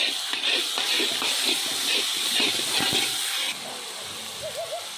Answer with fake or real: real